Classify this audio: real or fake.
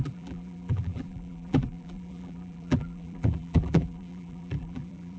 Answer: fake